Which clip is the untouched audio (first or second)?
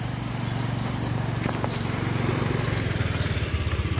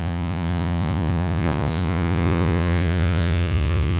first